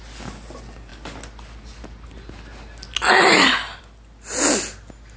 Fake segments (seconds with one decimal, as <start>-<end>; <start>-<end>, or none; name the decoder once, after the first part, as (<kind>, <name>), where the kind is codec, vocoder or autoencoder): none